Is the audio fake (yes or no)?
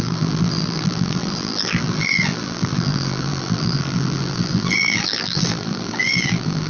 yes